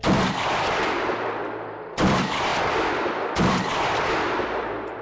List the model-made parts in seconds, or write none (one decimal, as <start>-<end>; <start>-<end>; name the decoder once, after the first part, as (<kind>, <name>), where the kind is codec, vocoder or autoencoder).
0.0-5.0 (vocoder, BigVGAN v2)